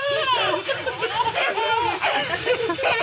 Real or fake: real